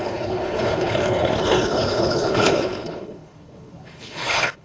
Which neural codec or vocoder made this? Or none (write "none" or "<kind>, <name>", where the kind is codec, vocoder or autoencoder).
codec, HILCodec